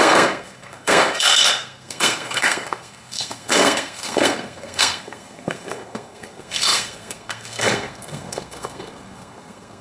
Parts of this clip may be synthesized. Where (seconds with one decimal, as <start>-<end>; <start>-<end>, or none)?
0.0-9.8